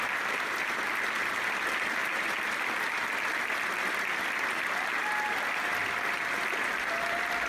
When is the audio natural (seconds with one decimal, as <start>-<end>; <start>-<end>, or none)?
0.0-7.5